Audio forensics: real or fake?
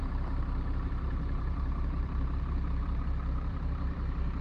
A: fake